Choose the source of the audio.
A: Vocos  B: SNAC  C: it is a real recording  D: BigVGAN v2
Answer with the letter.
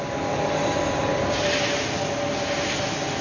C